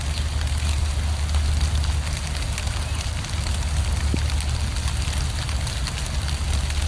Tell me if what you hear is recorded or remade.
recorded